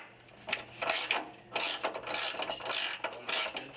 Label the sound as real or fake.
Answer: real